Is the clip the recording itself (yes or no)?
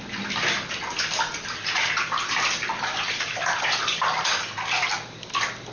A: yes